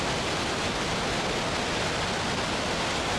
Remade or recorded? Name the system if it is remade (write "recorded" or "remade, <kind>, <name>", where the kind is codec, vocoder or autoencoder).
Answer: recorded